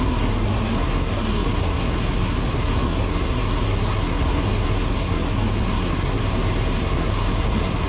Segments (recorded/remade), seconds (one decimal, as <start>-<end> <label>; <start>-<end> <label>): 0.0-6.2 remade; 6.2-6.8 recorded; 6.8-7.9 remade